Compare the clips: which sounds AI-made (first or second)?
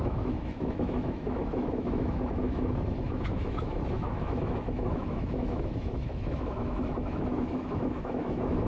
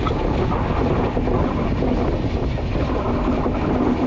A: first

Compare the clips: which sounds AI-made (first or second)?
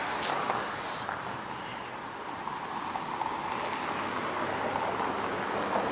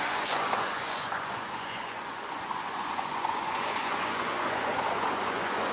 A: second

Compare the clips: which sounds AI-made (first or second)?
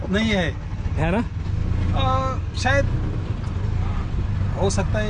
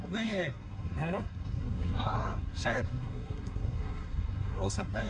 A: second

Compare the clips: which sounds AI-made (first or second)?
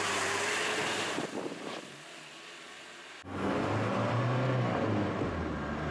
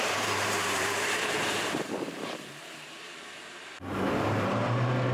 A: second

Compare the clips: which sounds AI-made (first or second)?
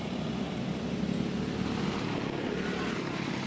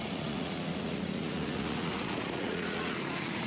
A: second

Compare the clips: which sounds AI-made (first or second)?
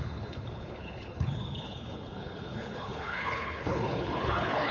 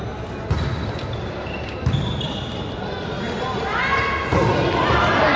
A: first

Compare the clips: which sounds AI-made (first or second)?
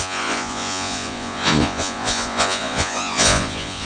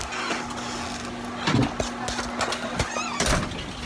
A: first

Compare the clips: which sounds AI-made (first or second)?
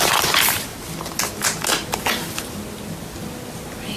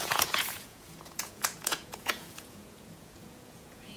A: second